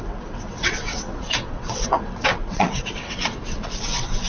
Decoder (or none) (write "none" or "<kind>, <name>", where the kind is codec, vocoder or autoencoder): vocoder, WaveNeXt